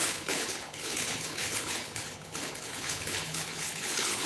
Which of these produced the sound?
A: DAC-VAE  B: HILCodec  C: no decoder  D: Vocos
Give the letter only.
B